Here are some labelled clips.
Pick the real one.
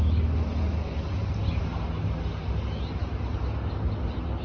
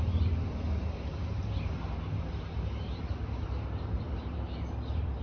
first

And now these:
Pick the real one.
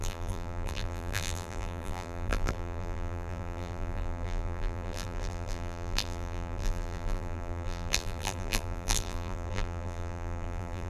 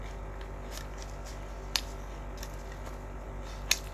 second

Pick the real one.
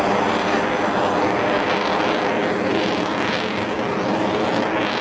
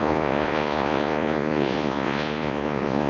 first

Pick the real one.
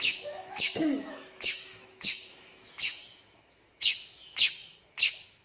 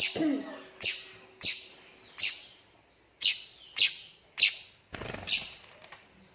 second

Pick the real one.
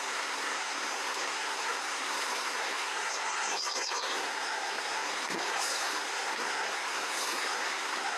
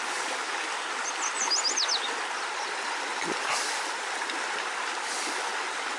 second